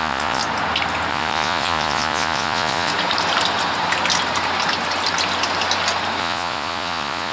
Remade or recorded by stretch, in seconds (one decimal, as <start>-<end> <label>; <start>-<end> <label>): 0.0-0.4 remade; 0.4-1.1 recorded; 1.1-2.9 remade; 2.9-6.2 recorded; 6.2-7.3 remade